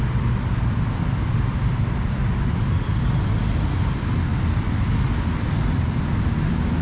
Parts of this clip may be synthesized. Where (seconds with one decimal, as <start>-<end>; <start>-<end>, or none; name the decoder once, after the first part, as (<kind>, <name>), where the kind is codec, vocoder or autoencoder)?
none